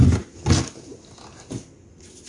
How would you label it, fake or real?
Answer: real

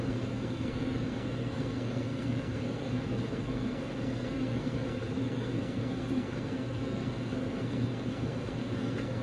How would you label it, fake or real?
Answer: fake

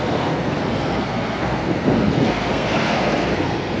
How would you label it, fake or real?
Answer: fake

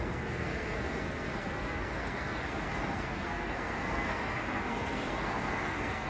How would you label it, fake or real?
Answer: fake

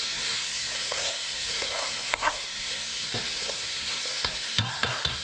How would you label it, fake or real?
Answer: fake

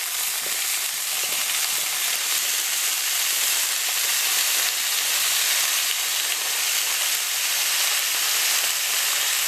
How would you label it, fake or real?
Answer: real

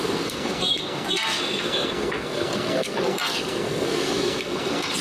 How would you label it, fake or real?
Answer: fake